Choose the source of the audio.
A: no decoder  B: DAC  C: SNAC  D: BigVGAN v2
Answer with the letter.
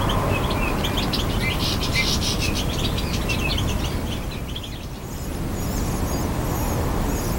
A